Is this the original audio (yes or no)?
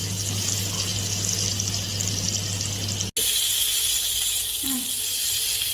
yes